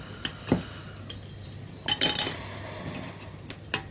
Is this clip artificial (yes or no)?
no